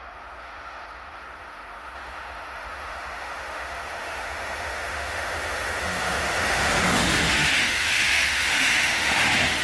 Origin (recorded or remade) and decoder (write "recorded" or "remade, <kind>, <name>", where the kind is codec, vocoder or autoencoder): remade, autoencoder, DAC-VAE